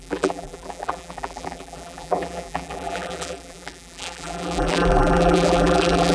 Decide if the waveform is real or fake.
fake